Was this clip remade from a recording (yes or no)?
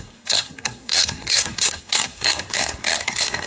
yes